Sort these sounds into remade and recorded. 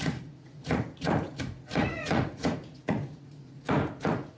remade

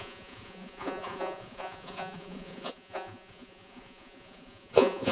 remade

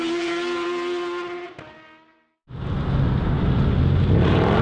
recorded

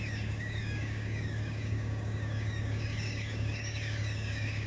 remade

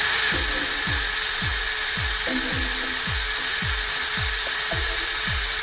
recorded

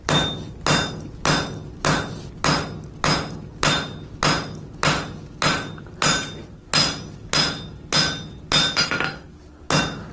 recorded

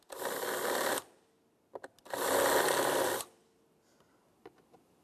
recorded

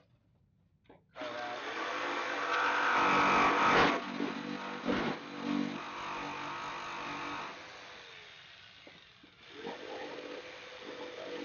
recorded